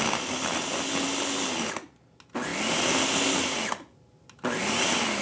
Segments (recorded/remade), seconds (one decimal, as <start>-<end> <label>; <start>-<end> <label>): 0.0-5.2 recorded